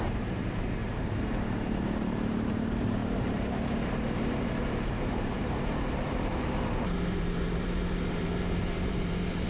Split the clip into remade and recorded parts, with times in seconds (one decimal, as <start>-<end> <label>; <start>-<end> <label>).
0.0-9.5 remade